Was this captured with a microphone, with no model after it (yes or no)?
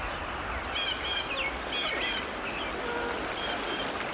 yes